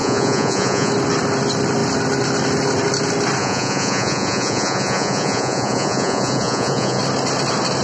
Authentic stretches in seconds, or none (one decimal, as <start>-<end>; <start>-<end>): 0.9-3.4; 7.0-7.8